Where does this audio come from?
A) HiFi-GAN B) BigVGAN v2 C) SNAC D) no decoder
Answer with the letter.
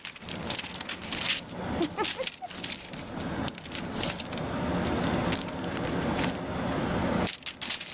D